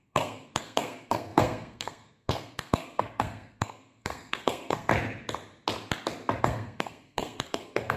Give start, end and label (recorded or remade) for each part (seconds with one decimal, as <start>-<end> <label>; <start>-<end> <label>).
0.0-4.9 remade; 4.9-6.4 recorded; 6.4-8.0 remade

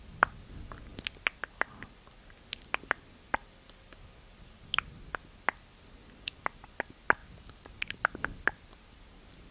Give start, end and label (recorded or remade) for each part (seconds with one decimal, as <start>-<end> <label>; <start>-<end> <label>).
0.0-9.5 recorded

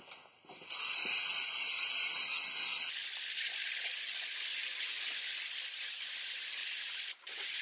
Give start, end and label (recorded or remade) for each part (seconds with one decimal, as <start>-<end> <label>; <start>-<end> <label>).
0.0-7.6 recorded

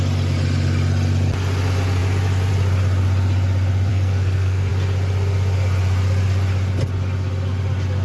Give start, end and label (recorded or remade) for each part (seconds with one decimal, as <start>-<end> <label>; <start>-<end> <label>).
0.0-3.9 recorded; 3.9-4.7 remade; 4.7-8.0 recorded

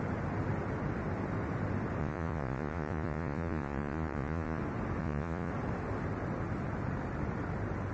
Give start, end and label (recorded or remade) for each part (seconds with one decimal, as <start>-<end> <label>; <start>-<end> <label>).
0.0-2.0 recorded; 2.0-4.6 remade; 4.6-5.0 recorded; 5.0-5.5 remade; 5.5-7.9 recorded

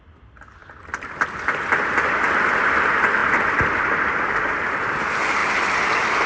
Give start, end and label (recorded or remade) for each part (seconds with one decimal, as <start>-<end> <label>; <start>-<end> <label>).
0.0-6.3 recorded

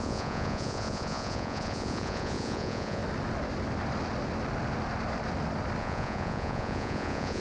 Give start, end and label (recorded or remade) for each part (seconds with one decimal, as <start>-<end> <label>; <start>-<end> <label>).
0.0-3.0 remade; 3.0-5.8 recorded; 5.8-7.4 remade

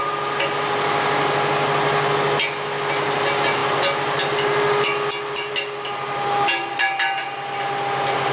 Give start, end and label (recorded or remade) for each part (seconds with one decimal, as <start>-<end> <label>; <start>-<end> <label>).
0.0-8.3 recorded